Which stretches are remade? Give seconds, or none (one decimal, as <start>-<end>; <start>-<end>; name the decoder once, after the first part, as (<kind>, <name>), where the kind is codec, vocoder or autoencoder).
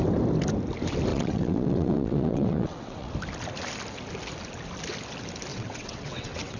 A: 1.1-3.1 (vocoder, WaveNeXt); 5.5-6.6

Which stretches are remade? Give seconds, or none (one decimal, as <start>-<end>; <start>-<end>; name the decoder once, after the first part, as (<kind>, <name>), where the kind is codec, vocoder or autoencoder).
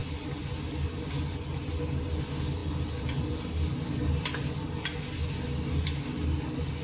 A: none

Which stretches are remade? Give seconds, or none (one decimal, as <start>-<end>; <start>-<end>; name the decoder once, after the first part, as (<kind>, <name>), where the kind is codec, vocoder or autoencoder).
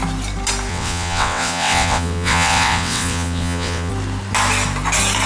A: 0.7-3.9 (vocoder, WaveNeXt)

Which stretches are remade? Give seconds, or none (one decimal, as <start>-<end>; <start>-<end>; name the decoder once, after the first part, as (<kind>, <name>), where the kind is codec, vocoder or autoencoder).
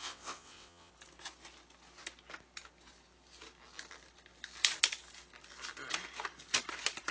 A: 0.0-0.9 (vocoder, WaveNeXt)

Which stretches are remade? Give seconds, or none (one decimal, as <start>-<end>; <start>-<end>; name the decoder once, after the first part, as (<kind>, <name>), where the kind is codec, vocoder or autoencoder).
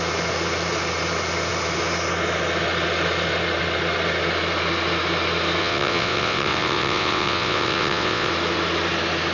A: 5.6-8.3 (vocoder, WaveNeXt)